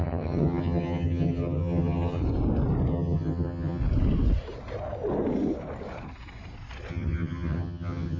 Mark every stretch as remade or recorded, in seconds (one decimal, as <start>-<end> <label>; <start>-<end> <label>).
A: 0.0-2.2 remade; 2.2-2.9 recorded; 2.9-3.8 remade; 3.8-6.9 recorded; 6.9-8.2 remade

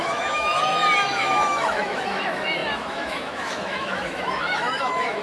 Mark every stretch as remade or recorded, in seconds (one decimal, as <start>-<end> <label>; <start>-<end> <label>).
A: 0.0-5.2 remade

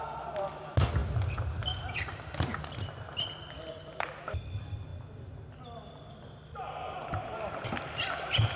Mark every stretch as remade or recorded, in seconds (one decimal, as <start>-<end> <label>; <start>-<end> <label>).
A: 0.0-8.6 recorded

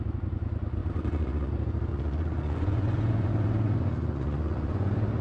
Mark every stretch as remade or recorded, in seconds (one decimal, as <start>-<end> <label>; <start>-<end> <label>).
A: 0.0-0.8 recorded; 0.8-1.5 remade; 1.5-1.9 recorded; 1.9-5.2 remade

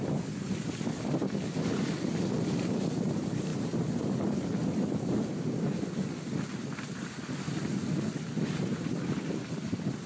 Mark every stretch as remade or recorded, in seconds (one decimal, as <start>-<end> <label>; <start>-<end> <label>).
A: 0.0-10.1 recorded

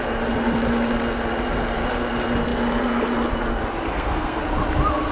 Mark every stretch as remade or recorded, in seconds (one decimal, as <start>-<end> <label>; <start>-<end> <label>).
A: 0.0-3.9 recorded; 3.9-4.4 remade; 4.4-5.1 recorded

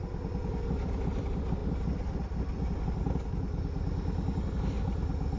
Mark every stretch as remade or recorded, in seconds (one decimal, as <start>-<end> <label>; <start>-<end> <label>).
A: 0.0-5.4 recorded